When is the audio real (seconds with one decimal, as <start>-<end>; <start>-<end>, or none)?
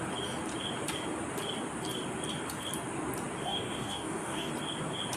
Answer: 0.0-3.4; 4.5-5.2